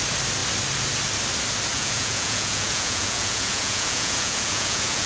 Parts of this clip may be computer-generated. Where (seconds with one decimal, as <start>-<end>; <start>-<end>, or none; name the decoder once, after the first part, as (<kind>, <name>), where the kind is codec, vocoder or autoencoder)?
1.7-5.1 (vocoder, Vocos)